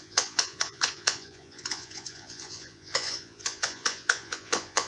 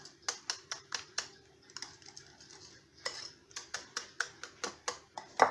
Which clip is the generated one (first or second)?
first